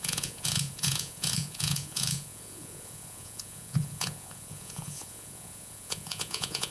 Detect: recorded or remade remade